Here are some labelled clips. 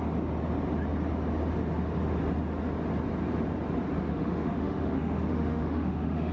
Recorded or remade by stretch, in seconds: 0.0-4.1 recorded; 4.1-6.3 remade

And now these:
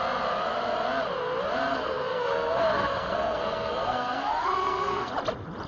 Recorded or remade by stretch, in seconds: 0.0-1.7 recorded; 1.7-5.1 remade; 5.1-5.7 recorded

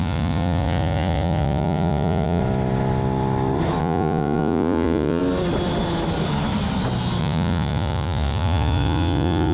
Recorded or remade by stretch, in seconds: 0.0-2.4 remade; 2.4-3.8 recorded; 3.8-5.2 remade; 5.2-7.2 recorded; 7.2-9.5 remade

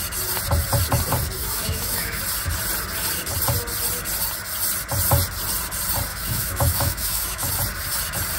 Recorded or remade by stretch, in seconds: 0.0-1.4 recorded; 1.4-2.2 remade; 2.2-6.1 recorded; 6.1-7.5 remade; 7.5-8.4 recorded